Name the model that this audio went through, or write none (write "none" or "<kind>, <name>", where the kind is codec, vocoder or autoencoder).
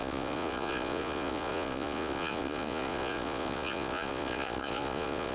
vocoder, Vocos